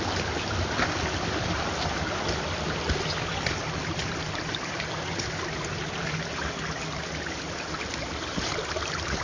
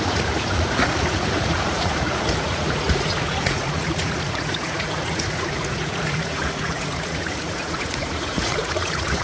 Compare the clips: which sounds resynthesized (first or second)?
second